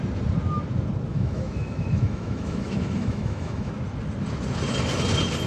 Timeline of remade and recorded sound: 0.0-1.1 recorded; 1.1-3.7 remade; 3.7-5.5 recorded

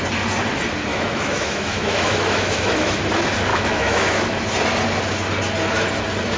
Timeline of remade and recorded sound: 0.0-0.9 recorded; 0.9-3.0 remade; 3.0-3.5 recorded; 3.5-4.4 remade; 4.4-6.4 recorded

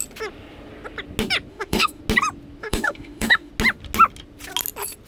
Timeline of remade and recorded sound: 0.0-1.5 recorded; 1.5-2.0 remade; 2.0-2.6 recorded; 2.6-3.5 remade; 3.5-5.1 recorded

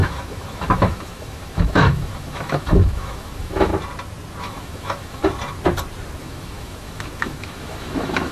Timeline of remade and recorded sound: 0.0-3.7 remade; 3.7-4.4 recorded; 4.4-5.2 remade; 5.2-6.2 recorded; 6.2-8.3 remade

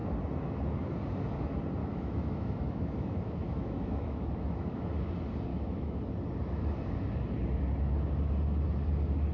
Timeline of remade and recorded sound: 0.0-1.8 recorded; 1.8-5.1 remade; 5.1-5.5 recorded; 5.5-6.0 remade; 6.0-9.3 recorded